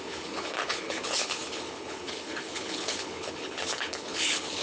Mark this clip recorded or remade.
remade